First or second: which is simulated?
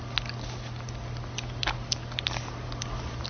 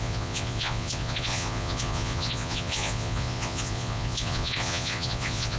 second